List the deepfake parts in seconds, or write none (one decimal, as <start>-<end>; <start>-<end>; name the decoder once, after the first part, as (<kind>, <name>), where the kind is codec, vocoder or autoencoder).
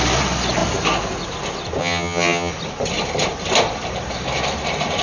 1.8-2.5 (vocoder, HiFi-GAN)